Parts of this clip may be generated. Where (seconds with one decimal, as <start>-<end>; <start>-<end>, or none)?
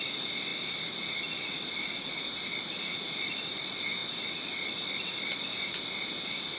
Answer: none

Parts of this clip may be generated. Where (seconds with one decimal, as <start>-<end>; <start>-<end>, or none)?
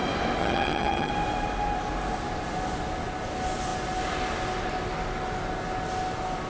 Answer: 0.4-1.1